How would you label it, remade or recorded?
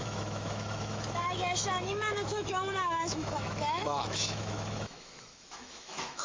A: remade